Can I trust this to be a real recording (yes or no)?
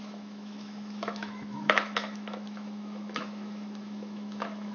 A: no